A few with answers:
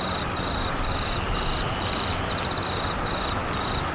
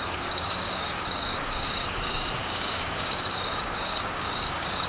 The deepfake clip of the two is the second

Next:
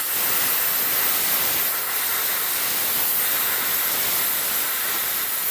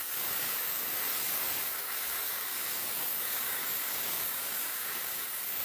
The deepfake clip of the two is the second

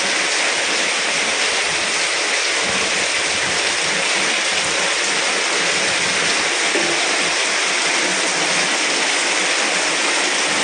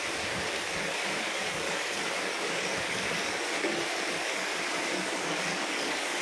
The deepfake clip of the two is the second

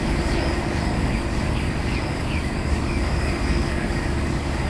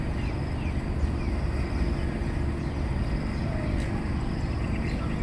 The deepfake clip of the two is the first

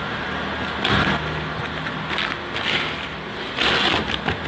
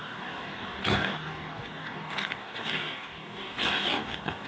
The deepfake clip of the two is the second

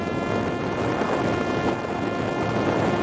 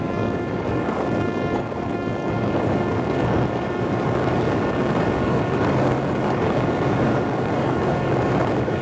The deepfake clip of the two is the second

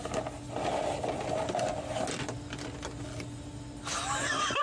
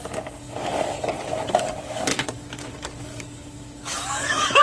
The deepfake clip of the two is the second